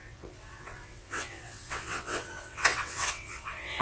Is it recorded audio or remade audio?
remade